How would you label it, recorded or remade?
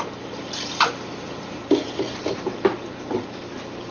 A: remade